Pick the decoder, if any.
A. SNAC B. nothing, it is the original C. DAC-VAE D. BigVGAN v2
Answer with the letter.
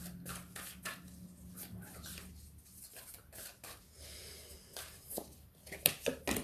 B